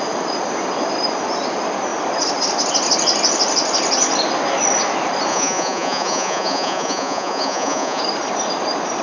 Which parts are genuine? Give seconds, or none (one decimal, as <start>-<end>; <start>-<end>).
0.0-5.3; 8.0-9.0